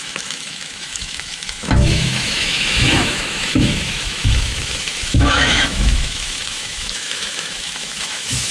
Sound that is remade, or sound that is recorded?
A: remade